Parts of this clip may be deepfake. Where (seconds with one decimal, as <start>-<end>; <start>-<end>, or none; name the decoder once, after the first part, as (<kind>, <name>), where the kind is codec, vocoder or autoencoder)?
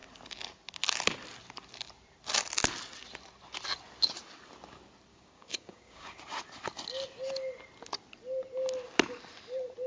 5.1-6.2 (codec, DAC)